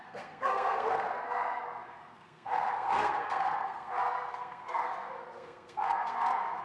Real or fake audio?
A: fake